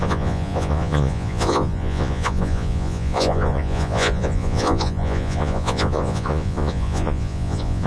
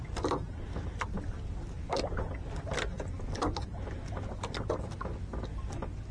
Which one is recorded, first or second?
second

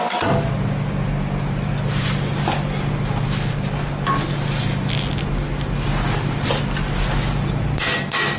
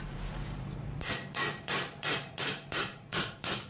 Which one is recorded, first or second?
first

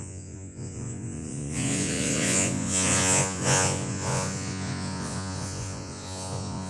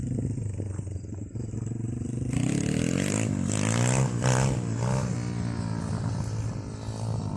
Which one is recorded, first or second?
second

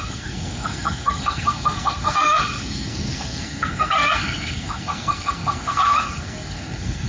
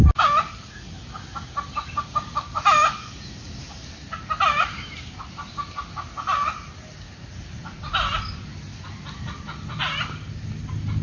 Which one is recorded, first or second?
second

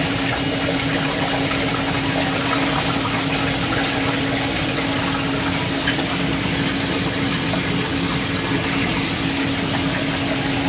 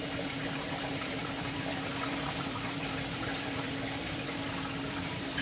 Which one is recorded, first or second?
first